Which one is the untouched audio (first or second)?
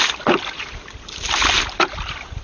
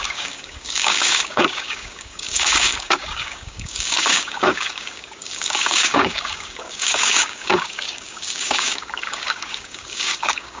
first